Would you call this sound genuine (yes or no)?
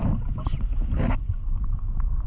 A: yes